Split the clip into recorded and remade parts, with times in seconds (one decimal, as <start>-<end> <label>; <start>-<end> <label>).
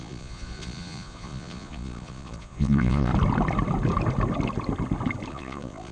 0.0-3.1 remade; 3.1-5.3 recorded; 5.3-5.9 remade